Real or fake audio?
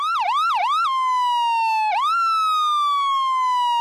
real